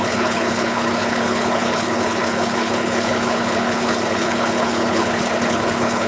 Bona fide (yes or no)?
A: no